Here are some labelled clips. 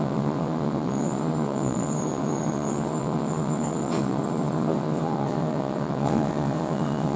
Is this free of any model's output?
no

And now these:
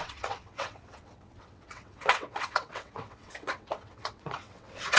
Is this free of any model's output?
no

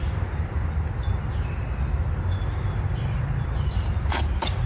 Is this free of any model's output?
yes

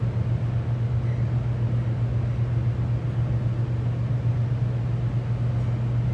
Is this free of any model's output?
yes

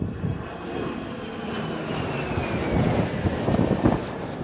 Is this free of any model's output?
yes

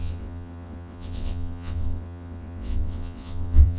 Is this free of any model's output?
no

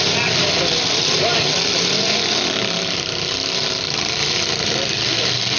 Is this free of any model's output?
yes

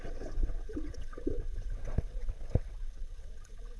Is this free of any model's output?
no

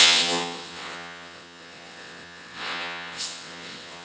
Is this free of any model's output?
no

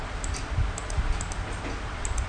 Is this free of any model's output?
yes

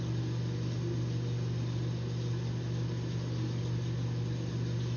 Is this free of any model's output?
yes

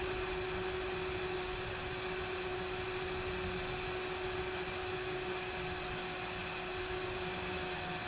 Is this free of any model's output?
yes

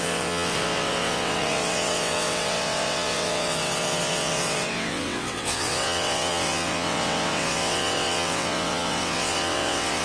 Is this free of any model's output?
no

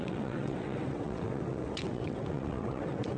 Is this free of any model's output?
no